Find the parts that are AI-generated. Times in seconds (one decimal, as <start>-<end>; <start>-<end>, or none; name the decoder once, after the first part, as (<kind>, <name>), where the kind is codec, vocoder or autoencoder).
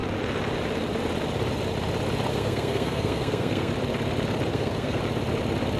2.3-3.7 (codec, SNAC); 4.5-5.0